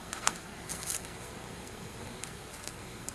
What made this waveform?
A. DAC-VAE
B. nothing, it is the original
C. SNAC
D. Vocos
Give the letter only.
C